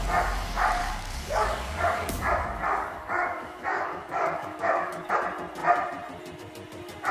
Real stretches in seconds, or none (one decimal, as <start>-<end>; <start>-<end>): 0.0-0.8; 5.1-7.1